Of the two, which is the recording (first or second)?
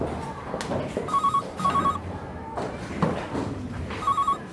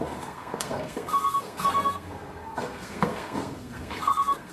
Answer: first